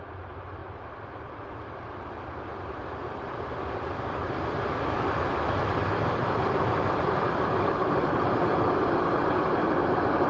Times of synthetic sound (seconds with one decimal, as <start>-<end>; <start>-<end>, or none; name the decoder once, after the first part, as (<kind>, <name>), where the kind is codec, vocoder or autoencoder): 0.0-10.3 (vocoder, BigVGAN v2)